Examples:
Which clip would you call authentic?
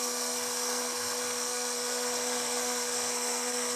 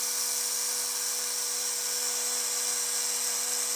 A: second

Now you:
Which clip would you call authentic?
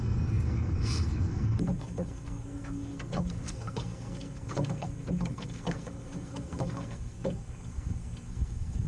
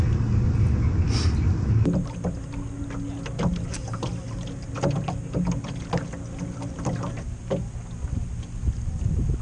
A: second